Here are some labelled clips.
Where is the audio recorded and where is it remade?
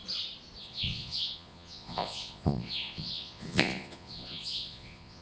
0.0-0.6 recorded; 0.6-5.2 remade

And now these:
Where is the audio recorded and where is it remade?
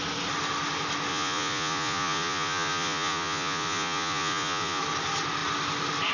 0.0-1.1 recorded; 1.1-4.8 remade; 4.8-6.1 recorded